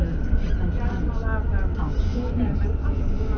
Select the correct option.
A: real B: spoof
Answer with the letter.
A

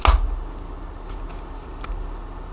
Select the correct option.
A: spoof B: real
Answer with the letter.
B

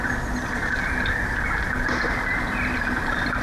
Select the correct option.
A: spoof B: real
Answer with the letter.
B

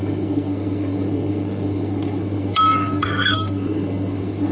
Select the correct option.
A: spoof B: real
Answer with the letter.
A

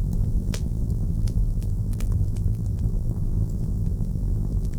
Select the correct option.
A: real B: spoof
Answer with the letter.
B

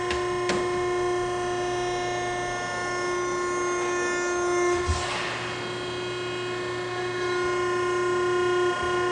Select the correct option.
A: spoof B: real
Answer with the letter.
B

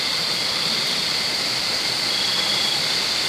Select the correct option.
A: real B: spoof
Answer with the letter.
A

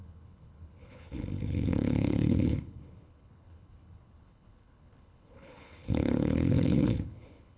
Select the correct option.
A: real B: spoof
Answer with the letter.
B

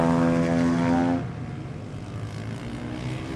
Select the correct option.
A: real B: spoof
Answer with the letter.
A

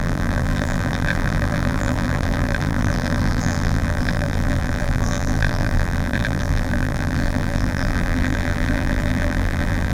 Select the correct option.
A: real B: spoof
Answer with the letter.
B